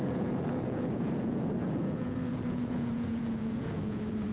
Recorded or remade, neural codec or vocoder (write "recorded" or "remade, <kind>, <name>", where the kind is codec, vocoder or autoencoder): remade, vocoder, Vocos